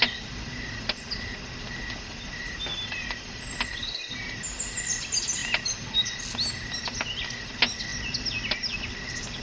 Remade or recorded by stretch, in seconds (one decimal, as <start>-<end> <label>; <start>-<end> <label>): 0.0-9.4 recorded